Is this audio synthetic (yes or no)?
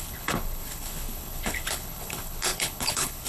yes